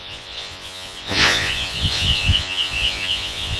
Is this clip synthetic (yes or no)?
yes